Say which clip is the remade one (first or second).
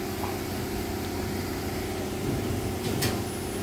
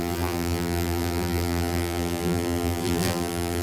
second